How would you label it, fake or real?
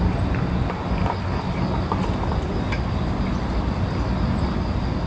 real